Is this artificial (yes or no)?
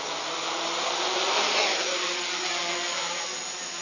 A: no